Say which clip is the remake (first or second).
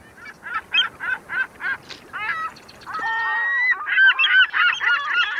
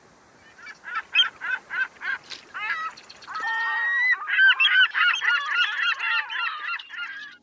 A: second